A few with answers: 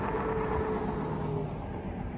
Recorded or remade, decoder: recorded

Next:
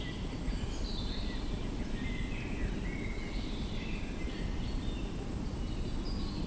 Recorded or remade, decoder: recorded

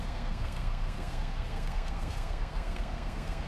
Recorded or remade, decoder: remade, codec, SNAC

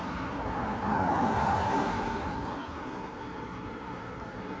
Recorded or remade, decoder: remade, codec, SNAC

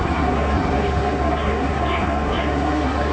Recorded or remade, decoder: remade, codec, SNAC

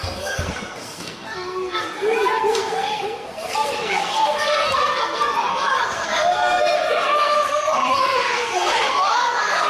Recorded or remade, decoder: remade, codec, SNAC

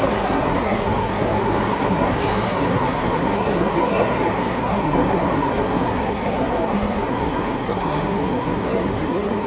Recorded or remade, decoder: remade, codec, SNAC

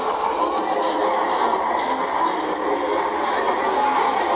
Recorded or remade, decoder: recorded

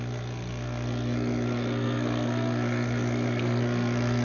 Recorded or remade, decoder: remade, codec, SNAC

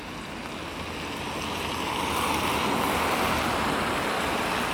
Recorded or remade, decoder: recorded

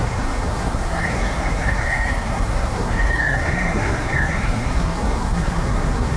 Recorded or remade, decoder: remade, codec, SNAC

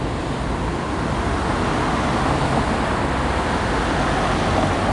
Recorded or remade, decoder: recorded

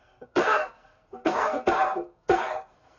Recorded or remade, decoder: remade, codec, SNAC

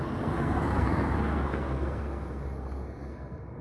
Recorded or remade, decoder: remade, codec, SNAC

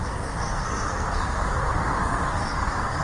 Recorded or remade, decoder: remade, codec, SNAC